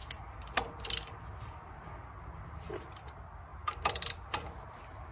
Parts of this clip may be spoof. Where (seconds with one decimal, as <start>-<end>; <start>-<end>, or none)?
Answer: none